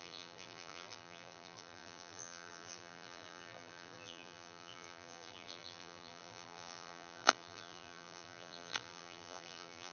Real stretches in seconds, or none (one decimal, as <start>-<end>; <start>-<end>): none